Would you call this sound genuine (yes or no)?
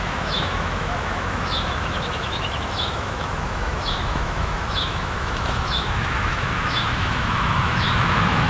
no